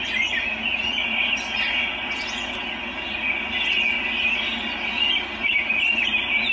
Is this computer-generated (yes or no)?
no